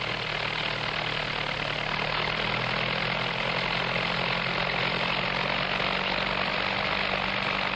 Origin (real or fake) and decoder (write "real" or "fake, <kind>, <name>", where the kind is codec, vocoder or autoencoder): real